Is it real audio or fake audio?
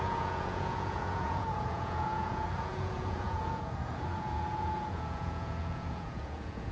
fake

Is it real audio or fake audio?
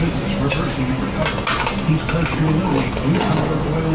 real